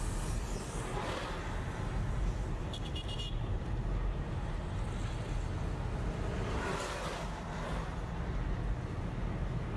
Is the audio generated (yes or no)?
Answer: no